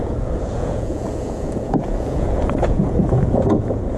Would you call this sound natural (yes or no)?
no